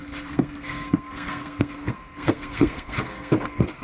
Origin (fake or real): fake